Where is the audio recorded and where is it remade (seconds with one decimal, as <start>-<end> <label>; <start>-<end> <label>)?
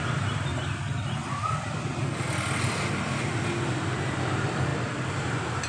0.0-0.5 remade; 0.5-3.9 recorded; 3.9-4.7 remade; 4.7-5.2 recorded; 5.2-5.7 remade